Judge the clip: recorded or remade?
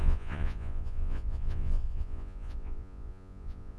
remade